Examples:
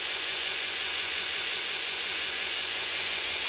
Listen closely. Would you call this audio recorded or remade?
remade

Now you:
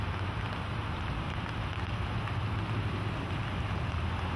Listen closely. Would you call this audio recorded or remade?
recorded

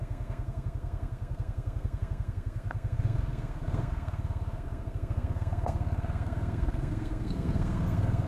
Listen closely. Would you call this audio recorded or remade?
remade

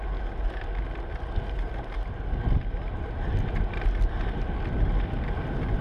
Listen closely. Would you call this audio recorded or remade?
recorded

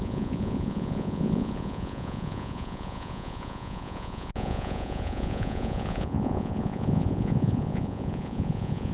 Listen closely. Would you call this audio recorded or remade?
remade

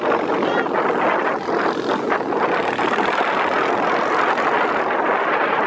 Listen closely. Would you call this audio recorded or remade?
recorded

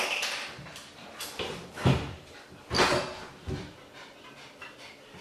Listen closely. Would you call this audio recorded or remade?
remade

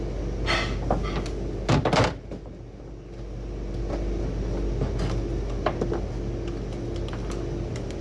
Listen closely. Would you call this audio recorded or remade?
recorded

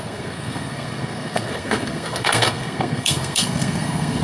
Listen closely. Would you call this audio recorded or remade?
remade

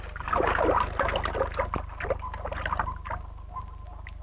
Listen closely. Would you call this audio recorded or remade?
recorded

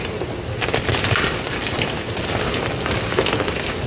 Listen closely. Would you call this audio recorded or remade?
recorded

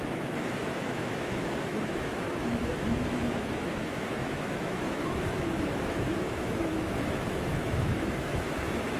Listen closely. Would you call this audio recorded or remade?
remade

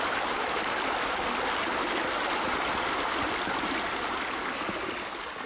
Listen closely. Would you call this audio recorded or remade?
recorded